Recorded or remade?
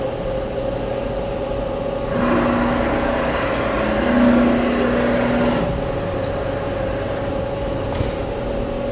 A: recorded